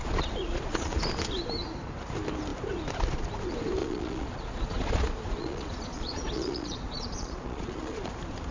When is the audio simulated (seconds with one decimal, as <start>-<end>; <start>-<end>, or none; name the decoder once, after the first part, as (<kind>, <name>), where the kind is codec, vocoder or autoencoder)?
0.0-1.0 (vocoder, Vocos); 3.8-8.1